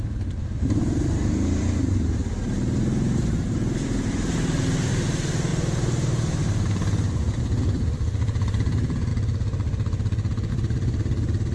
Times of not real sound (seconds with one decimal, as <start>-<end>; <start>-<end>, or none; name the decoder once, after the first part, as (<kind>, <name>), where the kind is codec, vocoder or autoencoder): 0.0-2.2 (vocoder, BigVGAN v2); 3.2-5.5; 6.4-9.1; 10.5-11.5